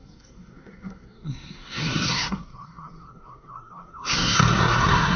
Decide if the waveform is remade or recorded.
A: remade